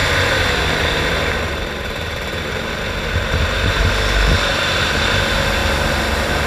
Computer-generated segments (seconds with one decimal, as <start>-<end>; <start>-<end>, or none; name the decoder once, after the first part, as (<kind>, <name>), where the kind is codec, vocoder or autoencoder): 0.0-3.9 (vocoder, BigVGAN v2)